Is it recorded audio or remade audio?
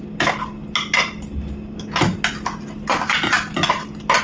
recorded